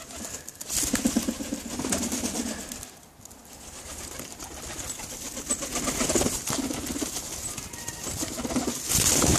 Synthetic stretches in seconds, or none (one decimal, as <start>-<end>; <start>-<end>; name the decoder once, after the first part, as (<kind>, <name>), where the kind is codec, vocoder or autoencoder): none